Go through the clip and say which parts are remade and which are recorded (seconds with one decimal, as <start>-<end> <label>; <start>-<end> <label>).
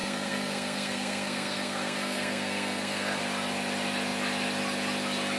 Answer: 0.0-3.2 remade; 3.2-5.4 recorded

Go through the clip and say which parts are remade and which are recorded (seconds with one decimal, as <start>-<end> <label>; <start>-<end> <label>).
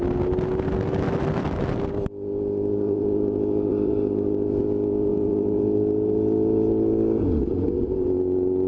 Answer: 0.0-8.7 recorded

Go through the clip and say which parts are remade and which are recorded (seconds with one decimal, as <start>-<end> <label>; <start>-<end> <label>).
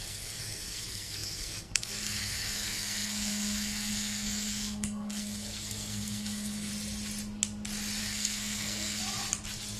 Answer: 0.0-6.7 remade; 6.7-8.0 recorded; 8.0-9.0 remade; 9.0-9.8 recorded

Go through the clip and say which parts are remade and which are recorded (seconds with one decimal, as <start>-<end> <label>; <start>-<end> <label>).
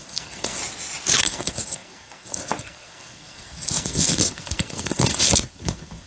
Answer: 0.0-0.6 remade; 0.6-1.2 recorded; 1.2-6.1 remade